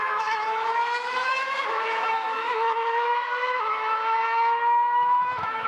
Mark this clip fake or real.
fake